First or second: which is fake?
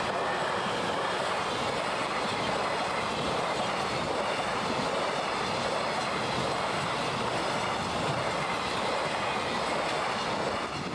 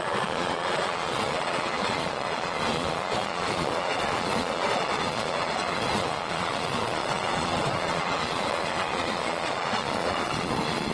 second